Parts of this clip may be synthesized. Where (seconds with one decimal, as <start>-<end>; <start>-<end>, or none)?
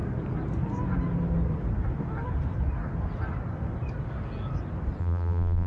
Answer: 5.0-5.7